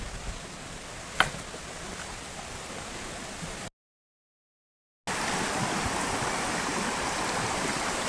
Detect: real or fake real